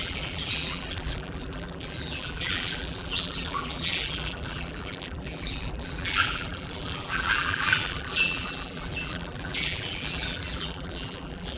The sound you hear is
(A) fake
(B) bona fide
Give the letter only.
A